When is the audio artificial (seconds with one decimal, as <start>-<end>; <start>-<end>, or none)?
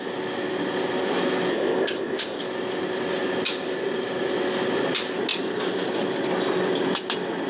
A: 1.5-2.4